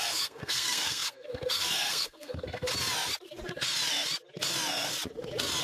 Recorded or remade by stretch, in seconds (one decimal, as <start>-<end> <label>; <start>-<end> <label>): 0.0-2.7 remade; 2.7-5.6 recorded